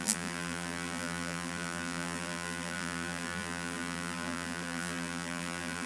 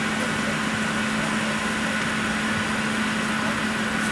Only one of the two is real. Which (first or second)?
second